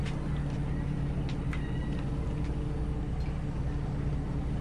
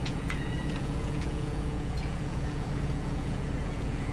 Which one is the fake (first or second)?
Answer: second